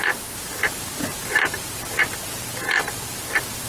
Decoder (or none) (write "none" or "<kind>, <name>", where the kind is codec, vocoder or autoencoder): vocoder, BigVGAN v2